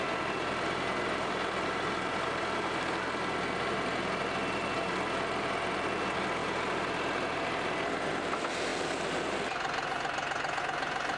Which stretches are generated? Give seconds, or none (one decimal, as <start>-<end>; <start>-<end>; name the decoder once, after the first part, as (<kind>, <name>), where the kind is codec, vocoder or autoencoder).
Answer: none